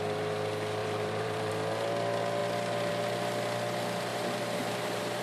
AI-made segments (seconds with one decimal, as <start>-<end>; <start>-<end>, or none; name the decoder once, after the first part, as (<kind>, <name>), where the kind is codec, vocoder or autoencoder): 0.8-1.5 (vocoder, BigVGAN v2); 4.1-5.2